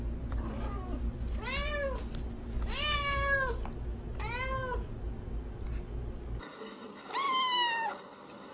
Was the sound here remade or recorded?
recorded